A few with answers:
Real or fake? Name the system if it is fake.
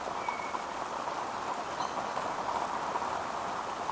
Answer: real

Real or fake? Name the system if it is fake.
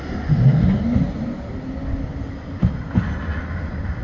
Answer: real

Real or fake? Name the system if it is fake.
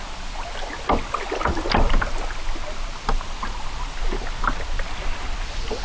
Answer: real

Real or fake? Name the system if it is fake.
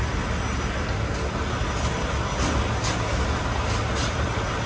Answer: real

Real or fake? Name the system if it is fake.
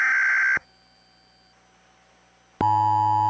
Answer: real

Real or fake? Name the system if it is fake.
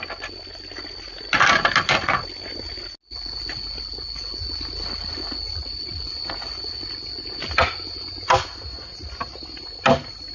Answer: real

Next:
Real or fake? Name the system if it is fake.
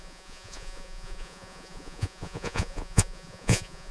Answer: fake, vocoder, Vocos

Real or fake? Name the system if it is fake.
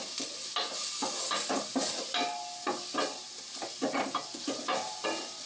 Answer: real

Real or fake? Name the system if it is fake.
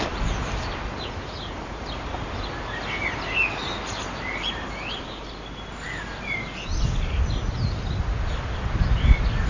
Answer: real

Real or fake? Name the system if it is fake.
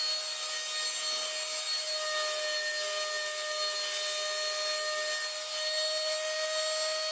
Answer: real